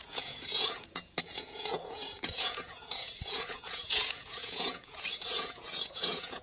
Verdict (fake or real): fake